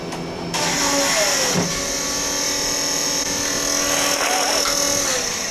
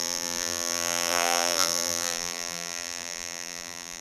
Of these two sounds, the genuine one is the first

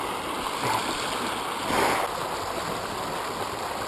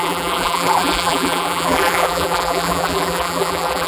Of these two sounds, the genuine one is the first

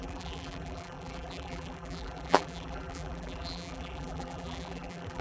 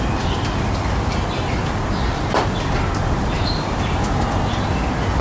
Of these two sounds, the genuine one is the second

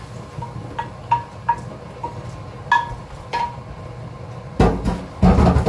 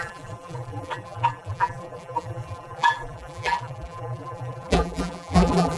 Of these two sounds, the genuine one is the first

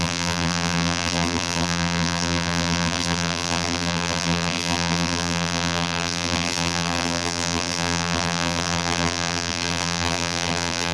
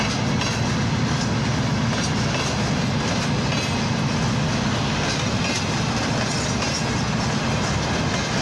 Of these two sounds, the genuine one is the second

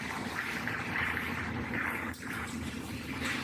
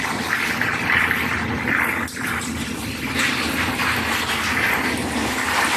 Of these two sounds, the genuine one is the second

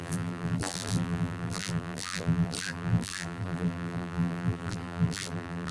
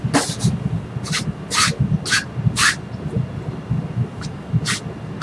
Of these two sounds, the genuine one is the second